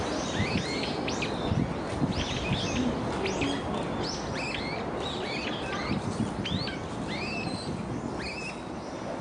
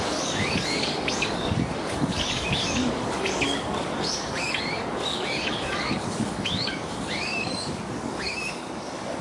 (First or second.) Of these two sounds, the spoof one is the second